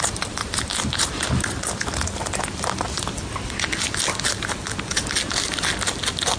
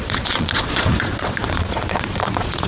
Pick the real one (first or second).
first